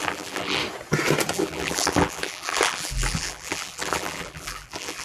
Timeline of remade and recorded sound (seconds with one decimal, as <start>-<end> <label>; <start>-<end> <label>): 0.0-0.6 remade; 0.6-1.3 recorded; 1.3-5.0 remade